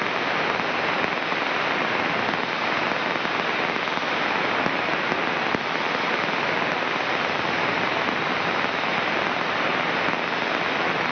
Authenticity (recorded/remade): recorded